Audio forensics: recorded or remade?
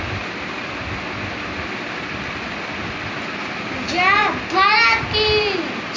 recorded